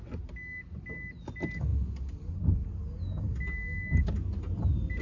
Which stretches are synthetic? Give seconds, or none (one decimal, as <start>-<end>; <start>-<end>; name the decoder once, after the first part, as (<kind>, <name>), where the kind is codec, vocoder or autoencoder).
none